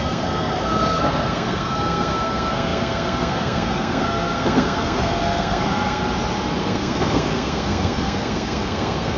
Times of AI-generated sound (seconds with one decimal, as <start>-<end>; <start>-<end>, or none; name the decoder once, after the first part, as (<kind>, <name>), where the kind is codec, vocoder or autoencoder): 0.0-6.0 (codec, SNAC); 6.6-9.2